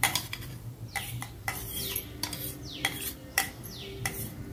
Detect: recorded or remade remade